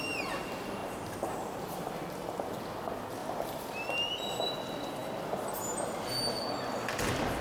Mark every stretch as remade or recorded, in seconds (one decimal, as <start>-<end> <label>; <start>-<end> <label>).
0.0-0.8 recorded; 0.8-2.6 remade; 2.6-7.4 recorded